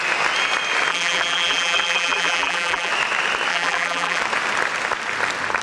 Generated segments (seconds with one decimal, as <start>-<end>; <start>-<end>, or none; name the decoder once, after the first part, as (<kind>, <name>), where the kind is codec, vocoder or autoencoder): 0.9-2.9 (vocoder, BigVGAN v2); 3.5-4.2